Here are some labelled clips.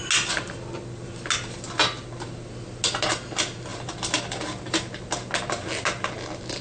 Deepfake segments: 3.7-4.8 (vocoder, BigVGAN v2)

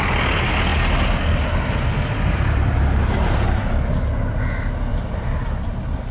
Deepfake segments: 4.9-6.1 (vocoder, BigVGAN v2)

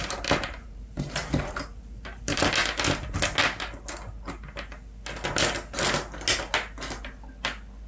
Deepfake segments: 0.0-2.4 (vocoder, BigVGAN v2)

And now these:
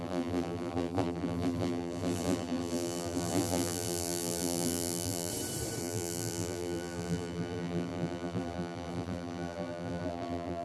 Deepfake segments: 0.0-5.3 (vocoder, BigVGAN v2); 5.8-10.6